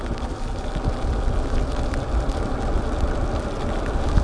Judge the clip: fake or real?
real